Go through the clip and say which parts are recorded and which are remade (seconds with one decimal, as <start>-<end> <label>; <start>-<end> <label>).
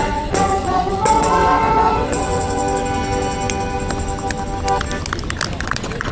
0.0-2.6 remade; 2.6-5.6 recorded; 5.6-6.1 remade